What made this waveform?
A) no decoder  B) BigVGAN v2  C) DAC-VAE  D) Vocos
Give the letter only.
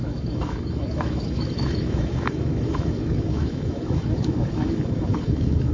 C